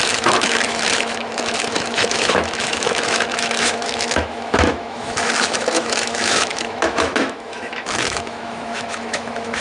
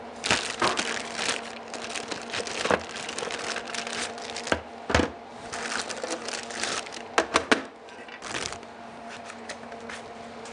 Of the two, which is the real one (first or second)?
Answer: second